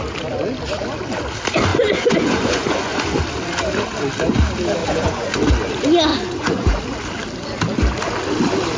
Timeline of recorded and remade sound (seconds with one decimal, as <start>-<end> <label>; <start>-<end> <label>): 0.0-1.7 recorded; 1.7-3.2 remade; 3.2-4.8 recorded; 4.8-5.4 remade; 5.4-6.1 recorded; 6.1-6.8 remade; 6.8-8.8 recorded